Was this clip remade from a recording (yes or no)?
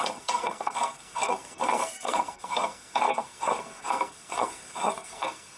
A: yes